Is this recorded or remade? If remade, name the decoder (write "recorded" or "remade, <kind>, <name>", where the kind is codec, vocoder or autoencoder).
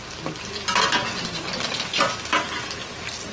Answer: recorded